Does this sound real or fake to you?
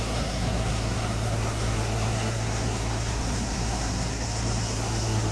fake